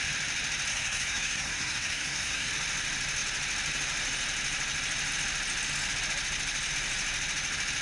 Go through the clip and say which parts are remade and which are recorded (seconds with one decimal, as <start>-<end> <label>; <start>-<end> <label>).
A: 0.0-0.7 recorded; 0.7-2.5 remade; 2.5-7.8 recorded